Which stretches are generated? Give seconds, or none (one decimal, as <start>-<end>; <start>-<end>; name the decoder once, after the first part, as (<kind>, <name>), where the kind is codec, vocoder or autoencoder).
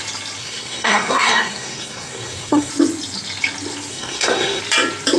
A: 0.4-2.7 (codec, SNAC); 3.9-4.6